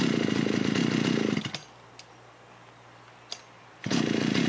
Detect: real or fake real